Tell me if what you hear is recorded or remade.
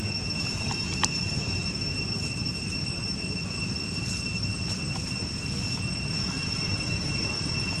recorded